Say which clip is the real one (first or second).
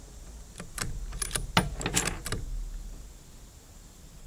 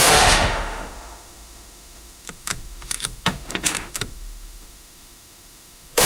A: first